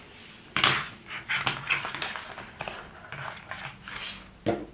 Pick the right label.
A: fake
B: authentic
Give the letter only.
B